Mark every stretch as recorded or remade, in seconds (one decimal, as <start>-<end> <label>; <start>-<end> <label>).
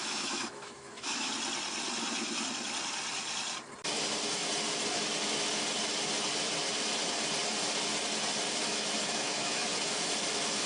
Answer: 0.0-1.3 remade; 1.3-8.7 recorded; 8.7-9.7 remade; 9.7-10.7 recorded